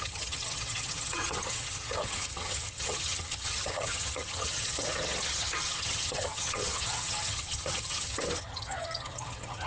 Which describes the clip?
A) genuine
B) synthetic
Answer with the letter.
B